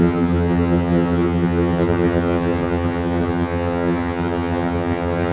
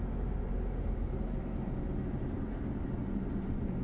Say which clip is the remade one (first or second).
first